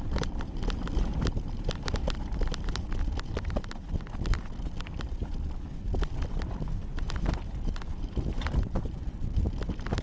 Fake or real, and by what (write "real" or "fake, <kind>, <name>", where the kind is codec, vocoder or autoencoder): real